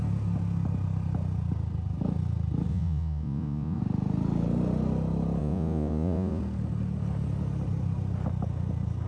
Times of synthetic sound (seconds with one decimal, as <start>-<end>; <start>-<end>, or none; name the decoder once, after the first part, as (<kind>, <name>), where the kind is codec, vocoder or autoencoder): 2.7-3.8 (vocoder, Vocos); 5.4-6.4